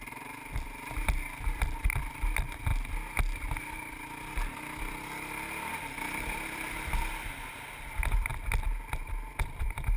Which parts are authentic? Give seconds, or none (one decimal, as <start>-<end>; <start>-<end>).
2.7-4.8; 8.3-9.3